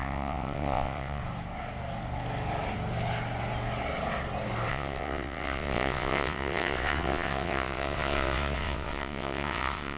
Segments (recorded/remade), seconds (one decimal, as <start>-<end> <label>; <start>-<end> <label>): 0.0-1.2 remade; 1.2-4.7 recorded; 4.7-10.0 remade